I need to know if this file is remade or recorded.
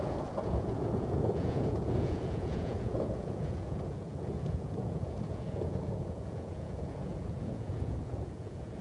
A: remade